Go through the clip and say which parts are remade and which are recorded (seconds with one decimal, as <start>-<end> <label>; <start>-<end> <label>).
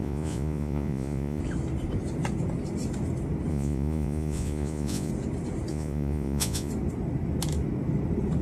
0.0-1.4 remade; 1.4-3.5 recorded; 3.5-5.1 remade; 5.1-5.7 recorded; 5.7-6.7 remade; 6.7-8.4 recorded